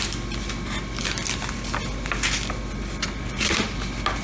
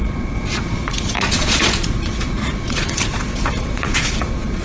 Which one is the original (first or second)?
first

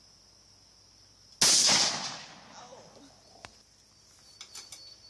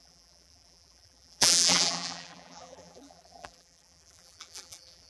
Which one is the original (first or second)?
first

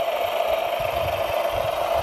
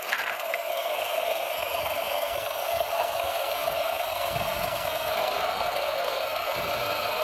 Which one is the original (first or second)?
first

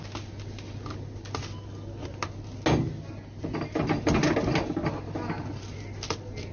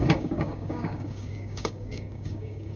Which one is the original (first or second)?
first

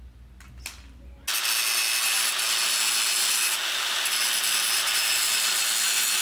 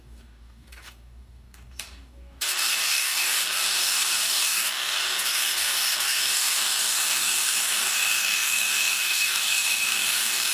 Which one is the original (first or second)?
first